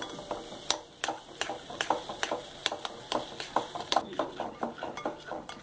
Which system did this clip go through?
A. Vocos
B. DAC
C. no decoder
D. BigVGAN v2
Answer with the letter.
C